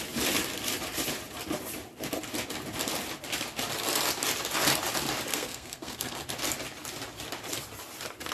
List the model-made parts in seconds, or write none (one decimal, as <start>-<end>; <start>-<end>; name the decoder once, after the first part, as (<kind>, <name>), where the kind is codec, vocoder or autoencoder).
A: 5.3-6.2 (codec, SNAC)